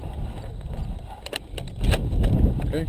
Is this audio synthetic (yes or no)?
no